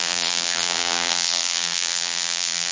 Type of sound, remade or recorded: remade